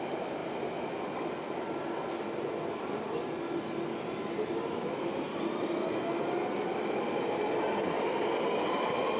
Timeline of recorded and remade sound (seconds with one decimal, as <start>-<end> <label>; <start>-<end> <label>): 0.0-9.2 recorded